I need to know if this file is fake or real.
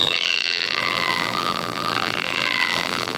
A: fake